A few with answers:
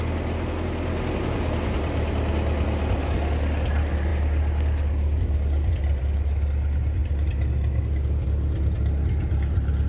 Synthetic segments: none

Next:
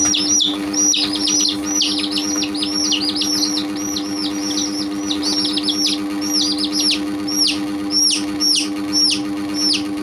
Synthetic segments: 0.5-1.4 (vocoder, BigVGAN v2)

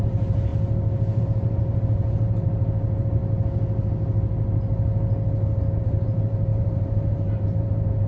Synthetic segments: 0.0-0.5 (vocoder, BigVGAN v2); 1.2-3.2; 5.8-8.1

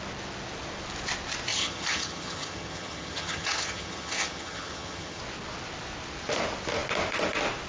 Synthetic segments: 1.5-5.2 (vocoder, HiFi-GAN)

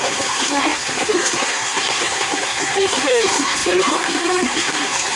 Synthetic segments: 0.0-5.2 (codec, SNAC)

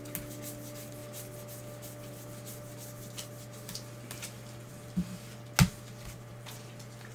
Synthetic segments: none

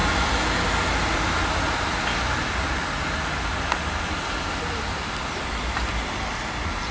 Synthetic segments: none